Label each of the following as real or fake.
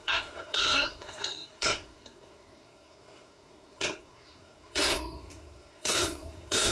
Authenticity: fake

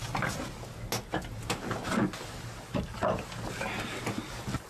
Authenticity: real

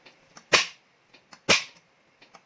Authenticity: real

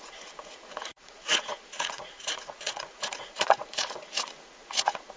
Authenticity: fake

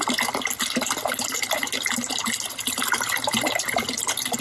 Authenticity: real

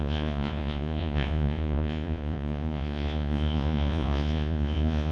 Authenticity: fake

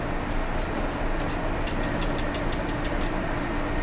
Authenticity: real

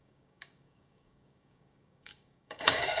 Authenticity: fake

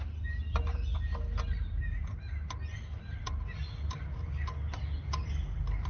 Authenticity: real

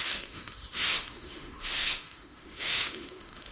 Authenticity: fake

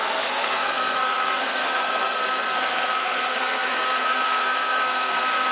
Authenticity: fake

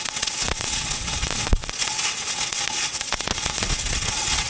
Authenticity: fake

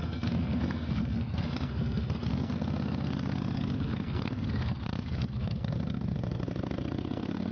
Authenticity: fake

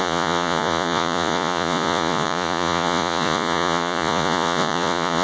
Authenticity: fake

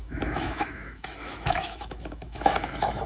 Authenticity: fake